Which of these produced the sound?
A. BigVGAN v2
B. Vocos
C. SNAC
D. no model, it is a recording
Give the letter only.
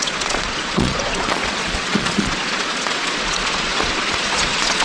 B